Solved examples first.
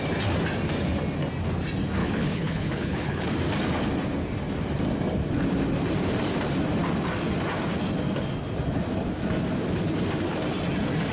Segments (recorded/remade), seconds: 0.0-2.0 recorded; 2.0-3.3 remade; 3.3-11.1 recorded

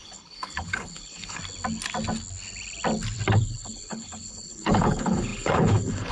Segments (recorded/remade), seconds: 0.0-1.4 remade; 1.4-3.3 recorded; 3.3-6.1 remade

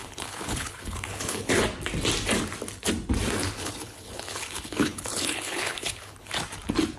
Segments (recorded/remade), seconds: 0.0-1.5 remade; 1.5-3.4 recorded; 3.4-6.3 remade; 6.3-7.0 recorded